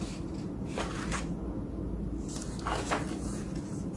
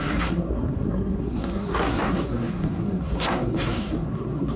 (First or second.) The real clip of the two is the first